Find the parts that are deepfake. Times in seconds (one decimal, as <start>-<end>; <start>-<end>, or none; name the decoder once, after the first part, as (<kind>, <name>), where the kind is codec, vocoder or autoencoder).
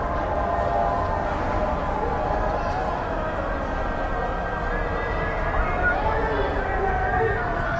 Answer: 6.8-7.8 (codec, SNAC)